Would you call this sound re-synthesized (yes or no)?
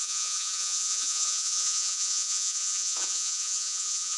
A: yes